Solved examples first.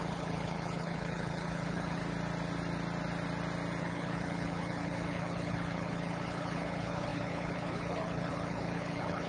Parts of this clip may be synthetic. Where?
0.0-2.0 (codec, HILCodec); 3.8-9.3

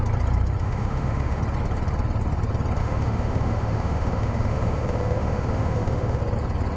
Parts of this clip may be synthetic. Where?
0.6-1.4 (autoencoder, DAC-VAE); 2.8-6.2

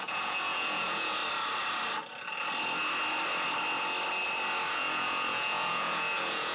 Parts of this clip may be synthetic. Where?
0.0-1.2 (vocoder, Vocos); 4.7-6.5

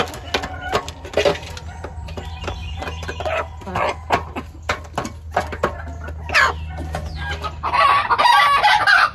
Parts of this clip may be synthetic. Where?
none

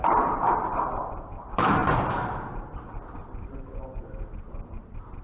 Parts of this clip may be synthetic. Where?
0.0-5.2 (vocoder, BigVGAN v2)